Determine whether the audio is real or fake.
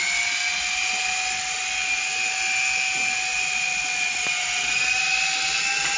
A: real